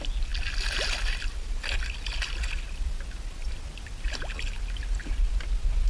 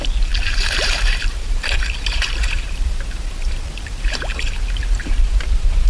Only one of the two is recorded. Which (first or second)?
first